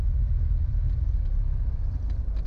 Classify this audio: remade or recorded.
recorded